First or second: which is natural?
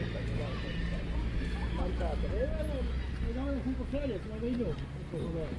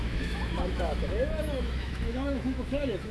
first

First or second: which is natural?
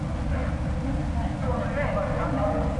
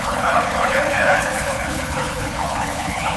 first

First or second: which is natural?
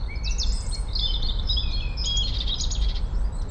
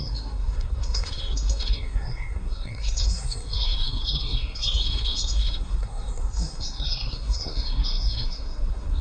first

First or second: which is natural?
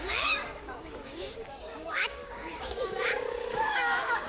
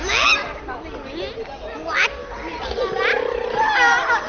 second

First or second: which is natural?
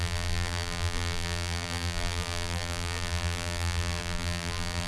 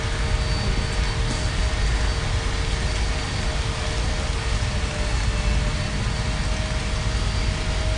second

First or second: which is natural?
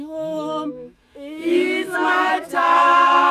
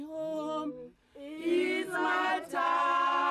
second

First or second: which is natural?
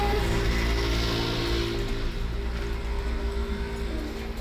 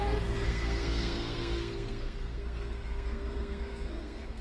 first